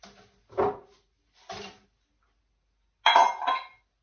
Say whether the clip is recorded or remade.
recorded